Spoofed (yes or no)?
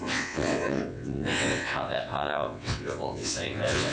yes